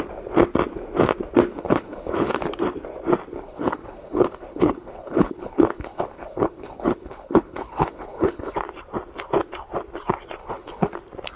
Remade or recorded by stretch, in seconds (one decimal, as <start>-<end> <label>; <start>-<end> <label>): 0.0-1.5 recorded; 1.5-2.4 remade; 2.4-3.3 recorded; 3.3-8.5 remade; 8.5-10.4 recorded; 10.4-10.9 remade; 10.9-11.4 recorded